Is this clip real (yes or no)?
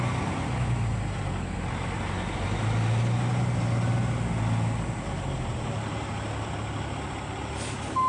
yes